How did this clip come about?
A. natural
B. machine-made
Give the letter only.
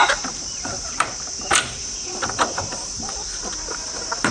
B